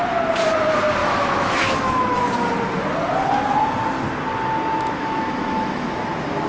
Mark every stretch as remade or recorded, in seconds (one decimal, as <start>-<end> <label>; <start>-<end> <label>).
0.0-1.0 recorded; 1.0-2.2 remade; 2.2-5.0 recorded; 5.0-6.0 remade; 6.0-6.5 recorded